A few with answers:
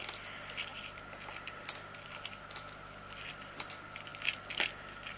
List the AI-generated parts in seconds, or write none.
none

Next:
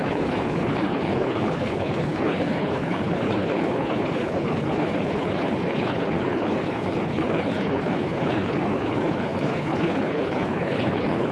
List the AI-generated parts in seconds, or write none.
0.0-11.3 (codec, HILCodec)

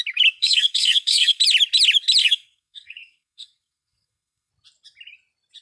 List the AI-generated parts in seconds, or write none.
0.4-1.4 (codec, SNAC); 2.2-4.5

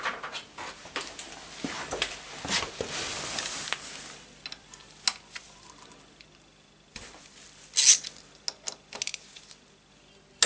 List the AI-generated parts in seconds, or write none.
none

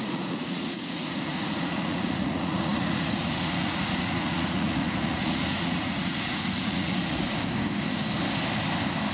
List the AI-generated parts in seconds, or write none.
0.0-7.2 (vocoder, Vocos)

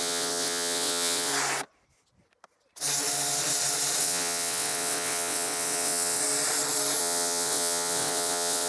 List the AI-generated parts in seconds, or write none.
0.0-1.3 (vocoder, WaveNeXt); 4.0-6.2; 7.0-8.7